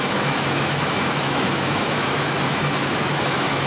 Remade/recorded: remade